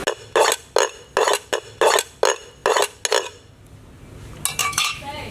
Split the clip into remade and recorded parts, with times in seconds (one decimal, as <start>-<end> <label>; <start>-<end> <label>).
0.0-4.6 recorded; 4.6-5.3 remade